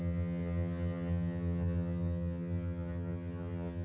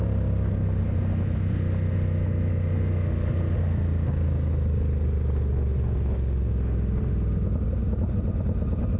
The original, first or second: second